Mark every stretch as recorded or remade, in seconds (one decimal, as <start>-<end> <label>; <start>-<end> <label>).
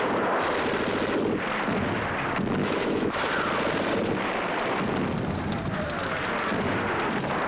0.0-2.6 recorded; 2.6-3.3 remade; 3.3-7.5 recorded